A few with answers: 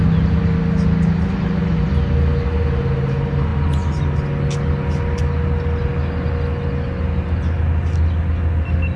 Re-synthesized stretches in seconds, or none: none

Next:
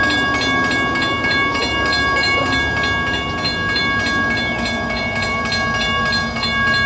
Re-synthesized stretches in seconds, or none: none

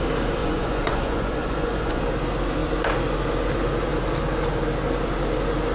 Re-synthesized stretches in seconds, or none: 0.4-2.0 (vocoder, Vocos)

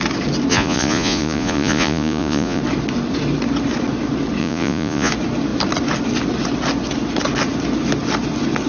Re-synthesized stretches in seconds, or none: 0.5-2.6 (vocoder, Vocos); 4.4-5.1